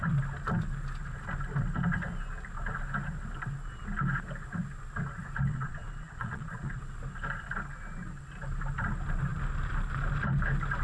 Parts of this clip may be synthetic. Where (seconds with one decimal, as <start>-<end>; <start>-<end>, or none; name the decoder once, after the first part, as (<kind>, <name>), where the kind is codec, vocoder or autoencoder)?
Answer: 5.5-6.8 (vocoder, Vocos)